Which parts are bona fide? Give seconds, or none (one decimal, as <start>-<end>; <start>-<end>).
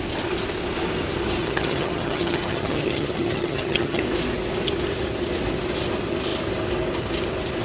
0.0-1.4; 4.0-7.6